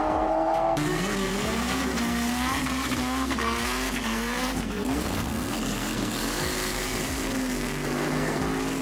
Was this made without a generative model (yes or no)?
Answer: no